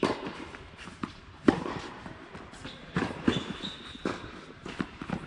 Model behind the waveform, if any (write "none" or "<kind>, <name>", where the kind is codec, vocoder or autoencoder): vocoder, BigVGAN v2